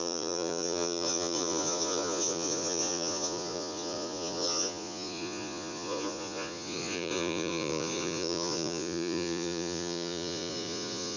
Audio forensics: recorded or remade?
remade